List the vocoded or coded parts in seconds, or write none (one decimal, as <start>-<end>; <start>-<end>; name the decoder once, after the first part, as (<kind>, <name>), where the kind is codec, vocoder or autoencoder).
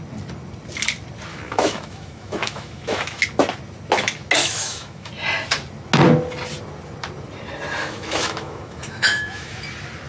1.3-3.2 (autoencoder, DAC-VAE); 4.4-5.1; 7.8-9.6